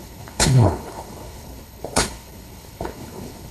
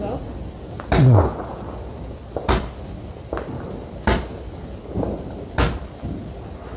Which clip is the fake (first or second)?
first